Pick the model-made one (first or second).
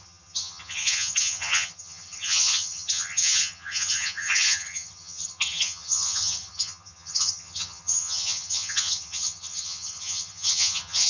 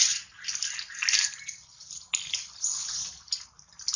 first